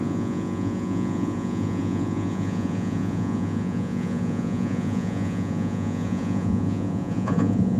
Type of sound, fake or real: fake